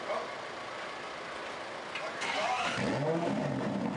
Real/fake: real